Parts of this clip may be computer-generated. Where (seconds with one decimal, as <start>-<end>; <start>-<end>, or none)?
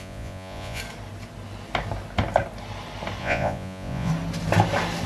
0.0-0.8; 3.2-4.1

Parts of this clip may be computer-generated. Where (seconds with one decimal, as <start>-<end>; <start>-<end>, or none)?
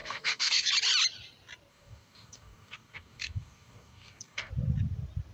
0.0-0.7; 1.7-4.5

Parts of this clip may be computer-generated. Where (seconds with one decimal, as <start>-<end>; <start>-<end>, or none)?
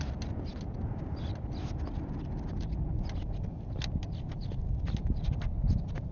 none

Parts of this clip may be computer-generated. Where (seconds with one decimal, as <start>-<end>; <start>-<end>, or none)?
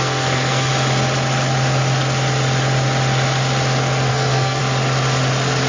0.0-0.7; 4.1-4.6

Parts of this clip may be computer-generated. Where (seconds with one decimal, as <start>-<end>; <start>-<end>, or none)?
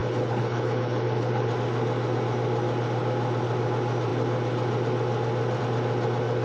0.0-1.5